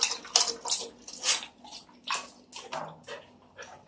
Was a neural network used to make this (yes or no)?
no